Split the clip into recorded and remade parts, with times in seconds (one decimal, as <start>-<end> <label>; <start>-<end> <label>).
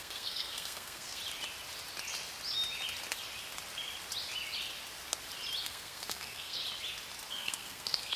0.0-1.2 remade; 1.2-5.6 recorded; 5.6-6.6 remade; 6.6-7.3 recorded; 7.3-8.2 remade